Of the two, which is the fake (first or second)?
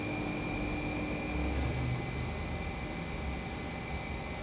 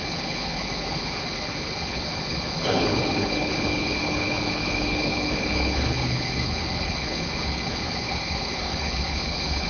second